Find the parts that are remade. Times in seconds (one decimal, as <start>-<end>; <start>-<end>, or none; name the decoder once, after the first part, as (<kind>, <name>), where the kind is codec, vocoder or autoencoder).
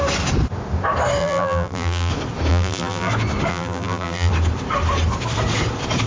1.2-2.1 (vocoder, BigVGAN v2); 2.5-3.1; 3.5-4.3